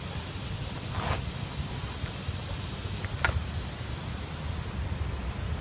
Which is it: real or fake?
real